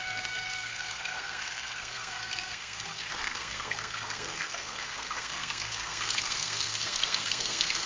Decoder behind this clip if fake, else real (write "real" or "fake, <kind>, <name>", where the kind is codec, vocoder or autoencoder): fake, codec, SNAC